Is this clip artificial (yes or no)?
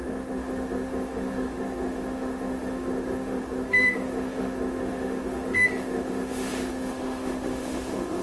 yes